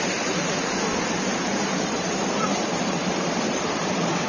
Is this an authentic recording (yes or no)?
no